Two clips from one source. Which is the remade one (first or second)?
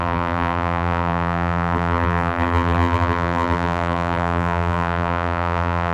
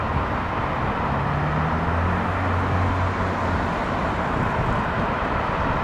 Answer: first